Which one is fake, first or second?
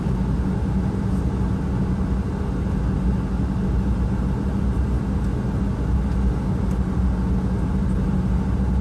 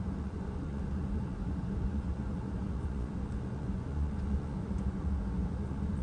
second